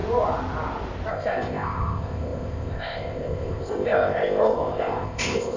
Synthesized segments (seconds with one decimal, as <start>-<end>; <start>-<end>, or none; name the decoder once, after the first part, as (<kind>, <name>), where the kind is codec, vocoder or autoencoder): 1.1-5.6 (codec, ZipCodec)